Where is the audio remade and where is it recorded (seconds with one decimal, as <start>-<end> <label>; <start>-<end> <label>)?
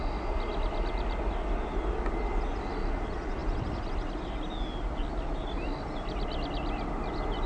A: 0.0-7.5 recorded